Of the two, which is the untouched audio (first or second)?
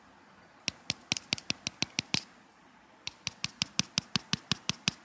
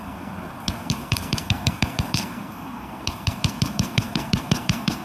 first